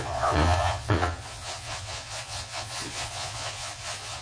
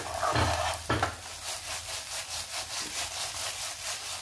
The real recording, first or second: second